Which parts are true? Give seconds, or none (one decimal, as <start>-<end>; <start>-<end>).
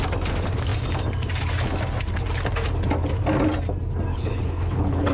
0.0-4.1